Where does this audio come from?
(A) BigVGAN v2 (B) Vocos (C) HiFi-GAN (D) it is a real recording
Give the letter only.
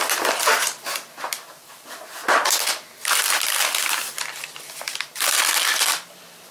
A